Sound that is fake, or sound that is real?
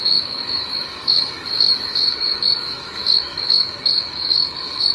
fake